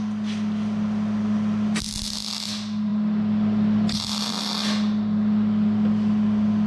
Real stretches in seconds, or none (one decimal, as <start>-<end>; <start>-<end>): 0.0-6.7